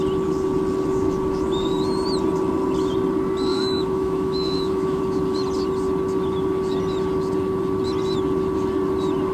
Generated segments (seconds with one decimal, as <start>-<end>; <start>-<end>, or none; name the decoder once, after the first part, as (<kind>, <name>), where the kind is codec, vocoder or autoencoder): 3.5-5.0 (autoencoder, DAC-VAE)